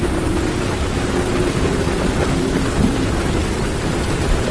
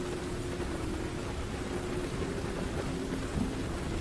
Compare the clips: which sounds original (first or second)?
second